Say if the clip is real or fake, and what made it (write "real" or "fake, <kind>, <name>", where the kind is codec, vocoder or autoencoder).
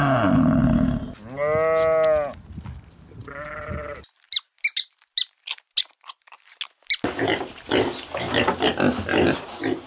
real